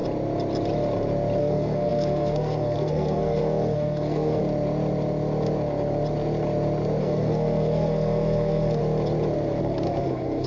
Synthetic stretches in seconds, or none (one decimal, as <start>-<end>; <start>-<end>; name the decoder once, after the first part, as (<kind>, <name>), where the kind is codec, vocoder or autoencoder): 1.4-4.4 (codec, SNAC); 7.0-8.8; 9.6-10.5